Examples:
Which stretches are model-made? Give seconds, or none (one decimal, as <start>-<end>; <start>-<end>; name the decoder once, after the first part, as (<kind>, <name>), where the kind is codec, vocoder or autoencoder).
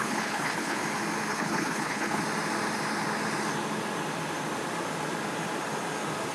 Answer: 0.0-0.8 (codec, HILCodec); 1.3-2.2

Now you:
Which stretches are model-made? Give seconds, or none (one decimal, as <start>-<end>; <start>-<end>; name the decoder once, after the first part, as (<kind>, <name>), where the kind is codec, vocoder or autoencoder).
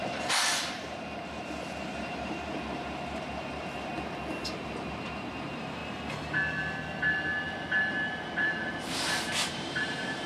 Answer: 0.0-3.9 (vocoder, BigVGAN v2); 4.5-5.8; 8.1-10.3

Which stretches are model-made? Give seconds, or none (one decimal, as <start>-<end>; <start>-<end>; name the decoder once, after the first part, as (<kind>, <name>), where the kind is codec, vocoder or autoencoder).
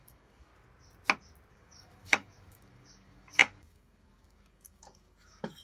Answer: 0.0-0.5 (codec, DAC); 1.5-5.6